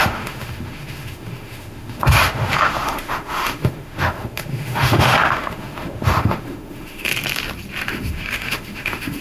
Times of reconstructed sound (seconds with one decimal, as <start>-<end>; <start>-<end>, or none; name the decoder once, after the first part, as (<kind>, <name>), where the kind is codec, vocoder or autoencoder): 0.0-7.1 (autoencoder, DAC-VAE); 7.9-9.2